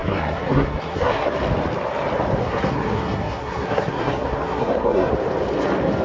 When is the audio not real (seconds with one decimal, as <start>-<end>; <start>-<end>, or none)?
0.0-1.3; 2.4-5.1